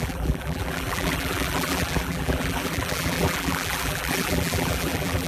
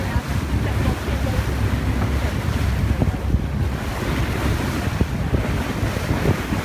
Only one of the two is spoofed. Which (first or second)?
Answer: first